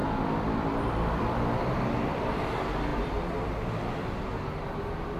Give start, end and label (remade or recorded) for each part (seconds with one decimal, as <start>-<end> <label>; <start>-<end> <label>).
0.0-2.3 remade; 2.3-2.9 recorded; 2.9-3.7 remade; 3.7-5.2 recorded